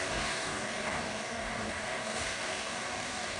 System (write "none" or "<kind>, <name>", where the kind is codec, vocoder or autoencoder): codec, DAC